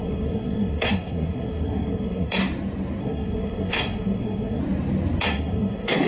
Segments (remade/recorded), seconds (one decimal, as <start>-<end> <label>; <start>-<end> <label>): 0.0-2.4 remade; 2.4-3.0 recorded; 3.0-4.6 remade; 4.6-5.2 recorded; 5.2-6.1 remade